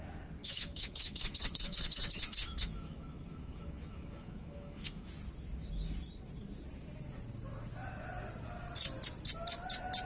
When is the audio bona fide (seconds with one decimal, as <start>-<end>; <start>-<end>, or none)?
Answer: 0.0-0.4; 5.1-10.1